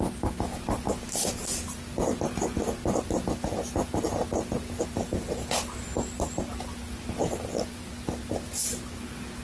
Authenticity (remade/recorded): recorded